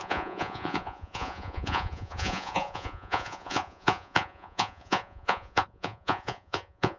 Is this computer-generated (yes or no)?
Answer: yes